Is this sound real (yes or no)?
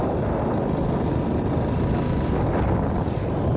yes